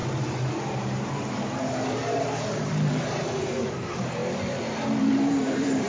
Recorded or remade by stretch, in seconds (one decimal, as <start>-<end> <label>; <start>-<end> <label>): 0.0-4.2 remade; 4.2-5.0 recorded; 5.0-5.9 remade